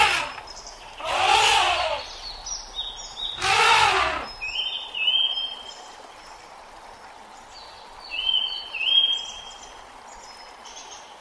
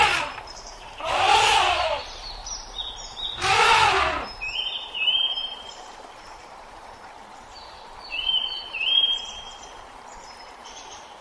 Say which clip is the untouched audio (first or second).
first